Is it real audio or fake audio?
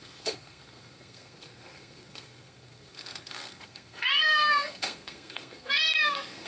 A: fake